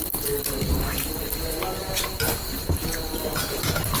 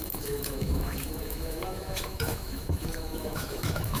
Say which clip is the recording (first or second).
first